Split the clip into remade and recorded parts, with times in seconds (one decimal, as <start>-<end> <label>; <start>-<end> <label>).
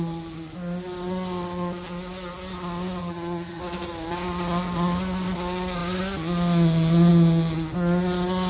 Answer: 0.0-3.0 recorded; 3.0-3.6 remade; 3.6-8.5 recorded